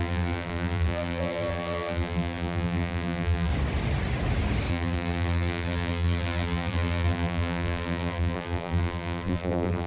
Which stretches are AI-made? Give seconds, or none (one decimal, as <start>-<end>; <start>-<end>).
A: 0.0-3.5; 4.7-9.9